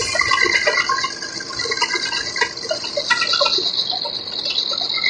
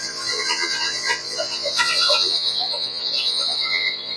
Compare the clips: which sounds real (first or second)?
first